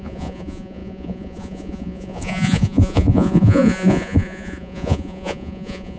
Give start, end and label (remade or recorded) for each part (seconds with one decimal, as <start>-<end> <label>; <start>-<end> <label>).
0.0-6.0 remade